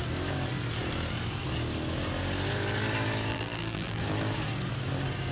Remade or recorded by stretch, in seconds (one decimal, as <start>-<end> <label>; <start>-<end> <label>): 0.0-3.3 recorded; 3.3-4.0 remade; 4.0-5.3 recorded